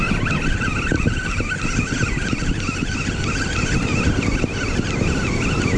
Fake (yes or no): no